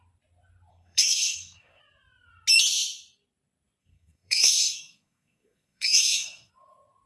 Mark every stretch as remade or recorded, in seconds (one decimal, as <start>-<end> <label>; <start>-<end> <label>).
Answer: 0.0-0.7 recorded; 0.7-1.8 remade; 1.8-3.8 recorded; 3.8-6.5 remade; 6.5-7.1 recorded